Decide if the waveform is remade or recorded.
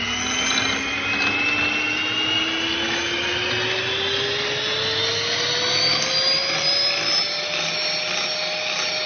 recorded